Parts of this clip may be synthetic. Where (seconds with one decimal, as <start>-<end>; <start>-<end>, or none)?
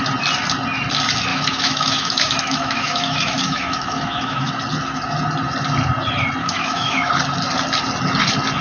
1.3-4.5; 6.4-7.1